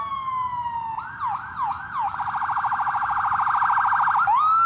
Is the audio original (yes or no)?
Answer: yes